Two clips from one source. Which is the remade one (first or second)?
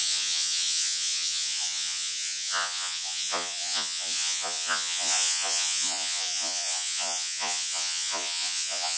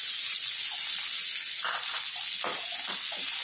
first